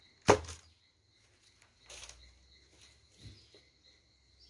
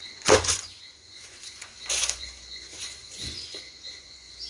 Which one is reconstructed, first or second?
second